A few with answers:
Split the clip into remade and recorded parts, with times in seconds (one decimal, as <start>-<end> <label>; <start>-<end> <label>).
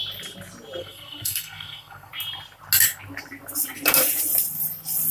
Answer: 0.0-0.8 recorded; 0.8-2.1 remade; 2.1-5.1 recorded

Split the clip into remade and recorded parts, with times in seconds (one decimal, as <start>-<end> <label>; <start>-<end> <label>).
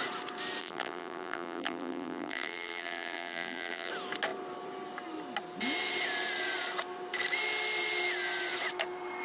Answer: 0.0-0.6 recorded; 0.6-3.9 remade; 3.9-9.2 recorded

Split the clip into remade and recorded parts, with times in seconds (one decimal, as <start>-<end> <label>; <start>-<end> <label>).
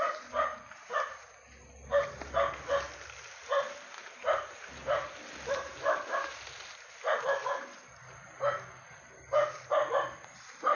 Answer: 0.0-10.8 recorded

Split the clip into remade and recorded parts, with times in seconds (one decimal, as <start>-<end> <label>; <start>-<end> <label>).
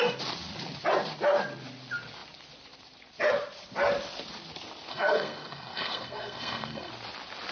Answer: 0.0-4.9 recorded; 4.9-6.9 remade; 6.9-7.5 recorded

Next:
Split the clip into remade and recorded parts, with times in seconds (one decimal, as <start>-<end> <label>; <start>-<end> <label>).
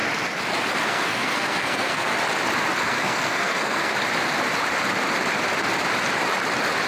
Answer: 0.0-0.8 recorded; 0.8-2.1 remade; 2.1-2.8 recorded; 2.8-3.9 remade; 3.9-6.9 recorded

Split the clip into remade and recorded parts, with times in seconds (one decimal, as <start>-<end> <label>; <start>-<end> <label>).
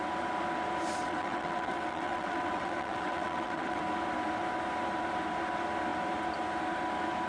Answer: 0.0-1.0 recorded; 1.0-3.8 remade; 3.8-7.3 recorded